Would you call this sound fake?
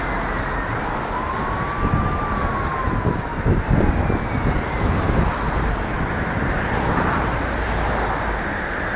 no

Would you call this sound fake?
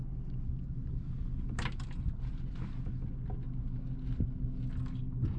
no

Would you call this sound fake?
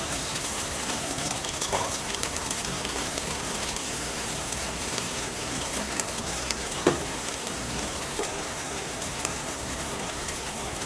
yes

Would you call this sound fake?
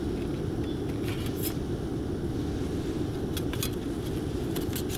no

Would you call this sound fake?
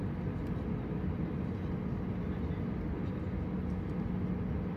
no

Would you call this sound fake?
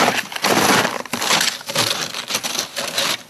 no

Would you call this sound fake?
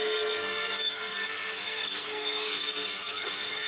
yes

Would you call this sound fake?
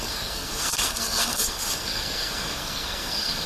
yes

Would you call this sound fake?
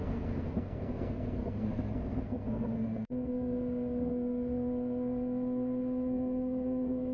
yes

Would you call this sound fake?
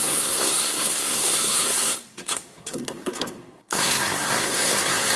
yes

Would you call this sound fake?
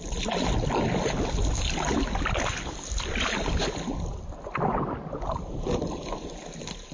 no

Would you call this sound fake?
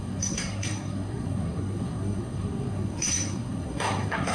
yes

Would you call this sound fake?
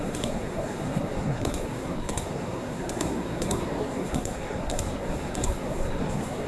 yes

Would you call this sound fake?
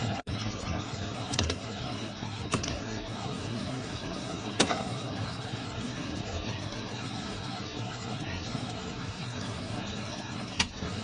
yes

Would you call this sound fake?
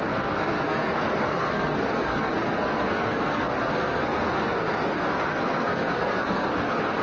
yes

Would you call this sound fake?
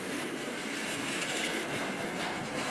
yes